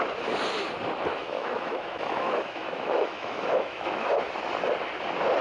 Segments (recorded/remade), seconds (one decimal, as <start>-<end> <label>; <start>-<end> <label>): 0.0-1.1 recorded; 1.1-4.3 remade; 4.3-5.4 recorded